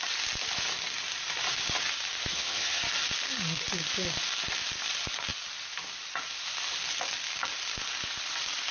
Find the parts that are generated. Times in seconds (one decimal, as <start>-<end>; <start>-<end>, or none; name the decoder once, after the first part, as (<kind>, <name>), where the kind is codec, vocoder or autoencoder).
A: 2.3-2.8 (vocoder, HiFi-GAN)